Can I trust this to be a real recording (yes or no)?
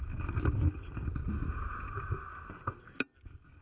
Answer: yes